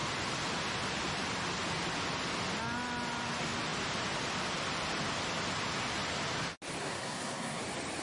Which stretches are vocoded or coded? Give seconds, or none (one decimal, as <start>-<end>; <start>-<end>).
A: 6.8-7.6

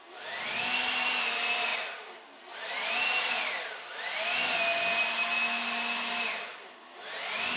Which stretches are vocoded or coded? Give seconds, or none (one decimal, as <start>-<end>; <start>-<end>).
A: none